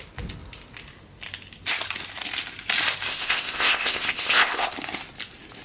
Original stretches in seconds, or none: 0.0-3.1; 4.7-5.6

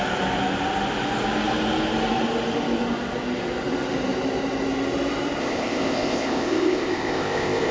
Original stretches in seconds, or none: 0.0-5.4

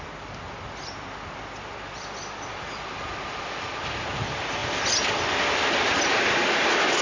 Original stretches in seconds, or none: 0.0-7.0

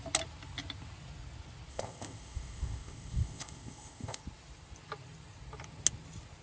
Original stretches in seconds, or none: 0.0-1.7; 4.2-6.4

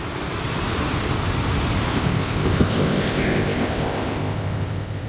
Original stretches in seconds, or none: 0.0-1.9